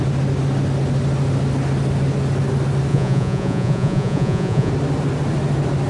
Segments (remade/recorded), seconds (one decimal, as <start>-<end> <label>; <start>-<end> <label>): 0.0-2.9 recorded; 2.9-4.7 remade; 4.7-5.9 recorded